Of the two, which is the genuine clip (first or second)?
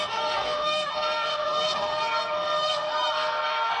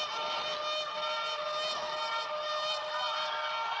second